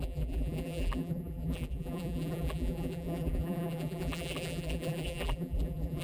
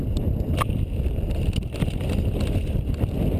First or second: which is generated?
first